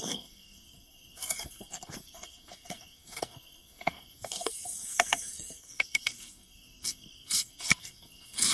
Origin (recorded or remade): remade